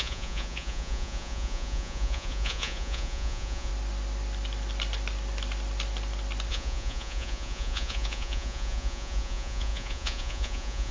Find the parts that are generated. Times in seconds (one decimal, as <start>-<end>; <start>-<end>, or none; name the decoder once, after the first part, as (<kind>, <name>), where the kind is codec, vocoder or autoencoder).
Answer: 0.0-3.7 (vocoder, Vocos); 6.5-10.9